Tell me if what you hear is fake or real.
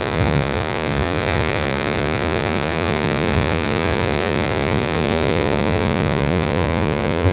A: fake